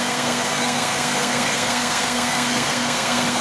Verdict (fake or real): fake